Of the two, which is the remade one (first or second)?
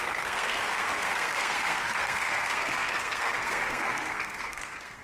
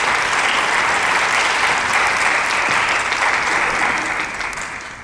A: first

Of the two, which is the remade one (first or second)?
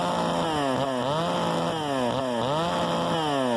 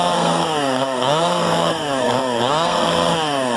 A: second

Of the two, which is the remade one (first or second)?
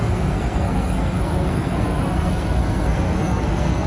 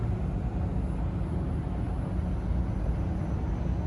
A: first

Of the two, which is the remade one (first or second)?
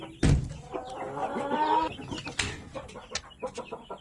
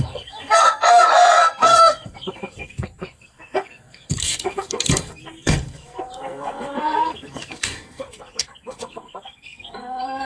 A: second